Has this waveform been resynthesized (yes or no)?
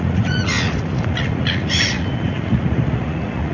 yes